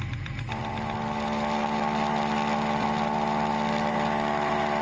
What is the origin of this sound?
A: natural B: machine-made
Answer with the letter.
A